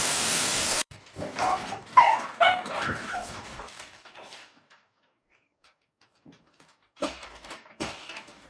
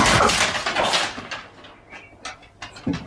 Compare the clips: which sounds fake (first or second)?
first